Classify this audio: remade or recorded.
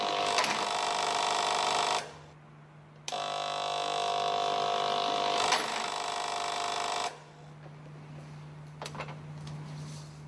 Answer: recorded